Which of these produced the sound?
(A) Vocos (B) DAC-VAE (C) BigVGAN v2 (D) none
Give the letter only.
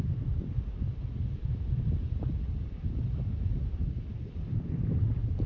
D